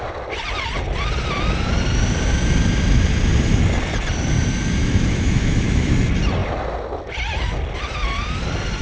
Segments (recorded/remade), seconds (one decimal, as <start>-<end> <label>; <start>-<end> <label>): 0.0-4.8 recorded; 4.8-5.9 remade; 5.9-8.8 recorded